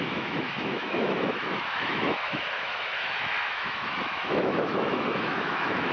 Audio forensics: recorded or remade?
remade